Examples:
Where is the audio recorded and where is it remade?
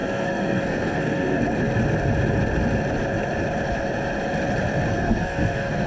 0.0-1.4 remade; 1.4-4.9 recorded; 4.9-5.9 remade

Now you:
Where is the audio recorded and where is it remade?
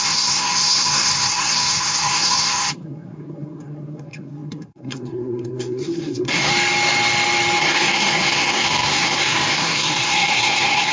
0.0-6.5 remade; 6.5-7.6 recorded; 7.6-10.9 remade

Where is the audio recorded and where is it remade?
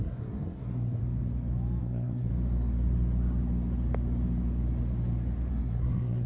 0.0-1.0 remade; 1.0-1.8 recorded; 1.8-2.3 remade; 2.3-5.5 recorded; 5.5-6.3 remade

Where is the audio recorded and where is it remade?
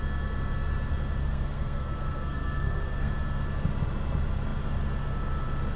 0.0-1.2 recorded; 1.2-3.1 remade; 3.1-5.8 recorded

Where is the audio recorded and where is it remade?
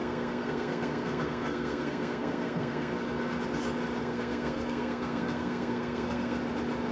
0.0-2.9 remade; 2.9-4.0 recorded; 4.0-6.4 remade; 6.4-6.9 recorded